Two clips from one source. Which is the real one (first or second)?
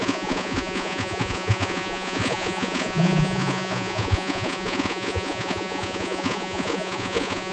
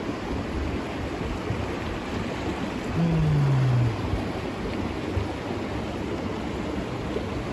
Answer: second